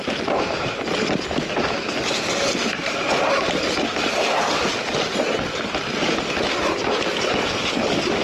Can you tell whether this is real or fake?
real